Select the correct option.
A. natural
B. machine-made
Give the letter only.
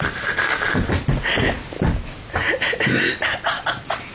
B